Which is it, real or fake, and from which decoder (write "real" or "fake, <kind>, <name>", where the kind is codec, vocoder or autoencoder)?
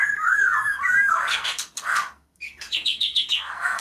fake, codec, SNAC